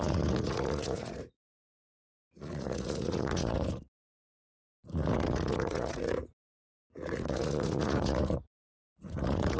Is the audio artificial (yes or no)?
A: yes